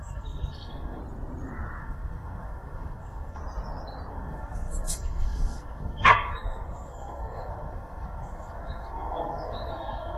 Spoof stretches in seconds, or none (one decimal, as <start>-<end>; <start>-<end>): 0.0-1.0; 1.8-3.4; 4.1-10.2